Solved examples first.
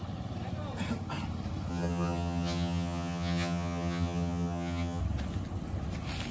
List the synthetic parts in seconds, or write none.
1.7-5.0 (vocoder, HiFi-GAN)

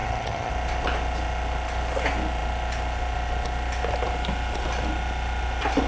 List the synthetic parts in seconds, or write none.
0.0-0.5 (vocoder, HiFi-GAN)

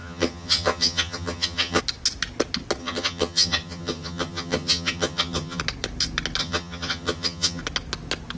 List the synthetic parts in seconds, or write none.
0.0-1.8 (vocoder, HiFi-GAN); 2.8-5.6; 6.4-7.6

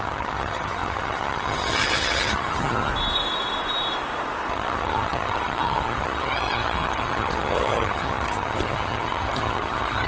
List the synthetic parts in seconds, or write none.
0.0-2.9 (vocoder, HiFi-GAN); 4.5-10.1

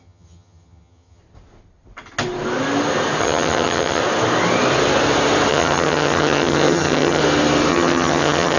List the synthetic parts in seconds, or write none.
0.0-1.2 (vocoder, HiFi-GAN); 3.2-4.0; 5.5-7.2; 7.7-8.6

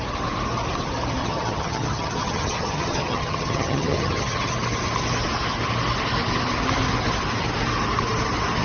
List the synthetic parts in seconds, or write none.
1.2-4.5 (vocoder, HiFi-GAN)

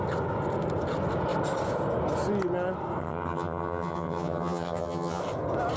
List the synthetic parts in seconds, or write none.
3.0-5.2 (vocoder, HiFi-GAN)